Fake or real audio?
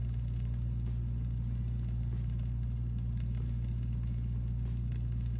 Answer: real